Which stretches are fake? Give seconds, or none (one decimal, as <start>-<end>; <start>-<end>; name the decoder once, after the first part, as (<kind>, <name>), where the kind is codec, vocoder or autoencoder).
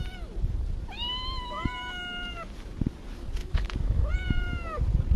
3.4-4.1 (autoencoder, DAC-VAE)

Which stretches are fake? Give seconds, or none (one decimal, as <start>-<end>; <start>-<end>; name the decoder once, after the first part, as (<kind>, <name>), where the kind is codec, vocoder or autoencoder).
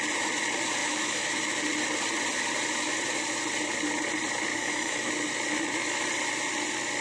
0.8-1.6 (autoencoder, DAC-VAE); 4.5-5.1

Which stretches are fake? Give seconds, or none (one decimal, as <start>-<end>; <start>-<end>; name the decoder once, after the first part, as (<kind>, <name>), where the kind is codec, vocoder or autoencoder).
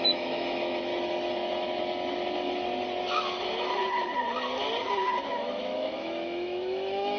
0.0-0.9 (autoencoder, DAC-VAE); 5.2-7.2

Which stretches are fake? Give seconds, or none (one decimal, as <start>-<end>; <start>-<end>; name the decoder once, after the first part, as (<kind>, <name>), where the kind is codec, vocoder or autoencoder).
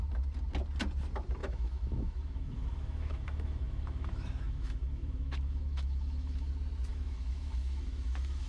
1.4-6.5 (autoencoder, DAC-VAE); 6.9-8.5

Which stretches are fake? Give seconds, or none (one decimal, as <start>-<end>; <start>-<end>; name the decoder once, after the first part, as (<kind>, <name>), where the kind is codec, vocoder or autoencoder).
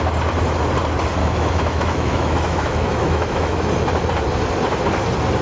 1.2-3.7 (autoencoder, DAC-VAE)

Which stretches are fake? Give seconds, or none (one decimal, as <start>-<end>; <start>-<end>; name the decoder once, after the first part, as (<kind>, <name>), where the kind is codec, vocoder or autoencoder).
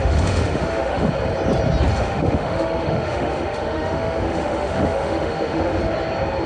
0.0-1.1 (autoencoder, DAC-VAE); 1.9-5.8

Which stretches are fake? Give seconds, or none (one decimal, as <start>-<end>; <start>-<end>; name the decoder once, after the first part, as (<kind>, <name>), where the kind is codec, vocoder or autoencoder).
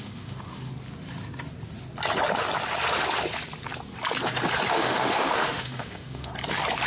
0.0-0.7 (autoencoder, DAC-VAE); 4.7-6.3